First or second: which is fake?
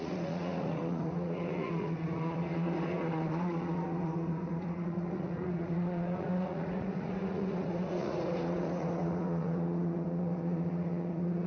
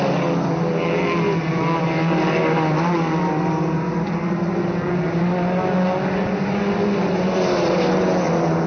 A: first